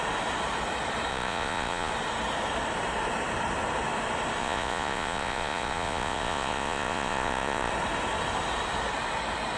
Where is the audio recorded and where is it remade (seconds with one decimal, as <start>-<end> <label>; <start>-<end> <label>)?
0.0-1.1 recorded; 1.1-1.9 remade; 1.9-4.4 recorded; 4.4-7.7 remade; 7.7-9.6 recorded